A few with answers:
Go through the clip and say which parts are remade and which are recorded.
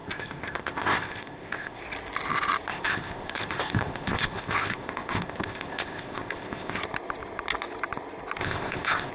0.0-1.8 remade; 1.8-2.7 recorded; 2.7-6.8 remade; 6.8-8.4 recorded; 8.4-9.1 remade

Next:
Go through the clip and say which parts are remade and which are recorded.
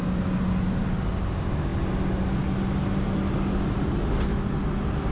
0.0-5.1 recorded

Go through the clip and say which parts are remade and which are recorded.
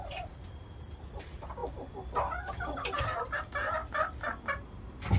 0.0-1.6 remade; 1.6-3.0 recorded; 3.0-3.8 remade; 3.8-5.2 recorded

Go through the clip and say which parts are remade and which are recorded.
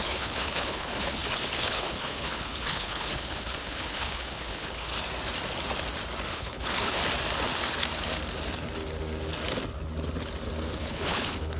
0.0-4.9 remade; 4.9-6.3 recorded; 6.3-7.0 remade; 7.0-10.8 recorded; 10.8-11.6 remade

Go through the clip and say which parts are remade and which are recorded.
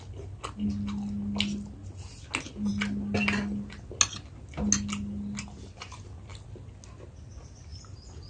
0.0-7.7 recorded; 7.7-8.3 remade